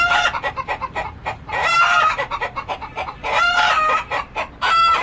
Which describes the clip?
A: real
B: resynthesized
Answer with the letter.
B